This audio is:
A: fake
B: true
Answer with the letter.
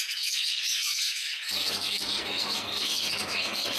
A